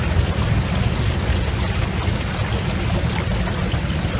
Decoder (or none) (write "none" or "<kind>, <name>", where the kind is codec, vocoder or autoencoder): none